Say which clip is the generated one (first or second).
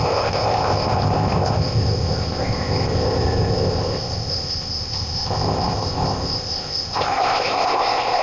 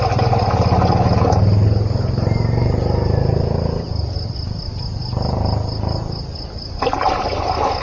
first